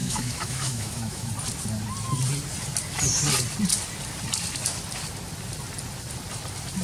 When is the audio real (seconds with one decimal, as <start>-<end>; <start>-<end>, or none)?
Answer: 1.3-6.8